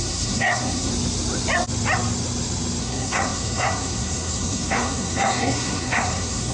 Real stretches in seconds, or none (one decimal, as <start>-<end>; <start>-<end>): 0.9-2.8